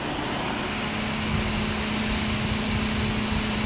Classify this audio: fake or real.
real